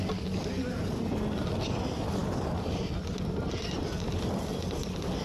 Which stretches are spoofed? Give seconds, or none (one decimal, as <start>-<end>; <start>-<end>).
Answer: none